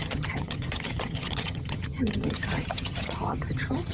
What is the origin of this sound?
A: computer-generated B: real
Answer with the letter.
A